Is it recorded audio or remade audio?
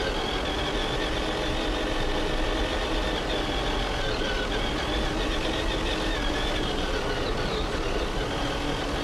recorded